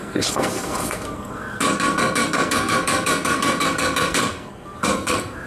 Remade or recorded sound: remade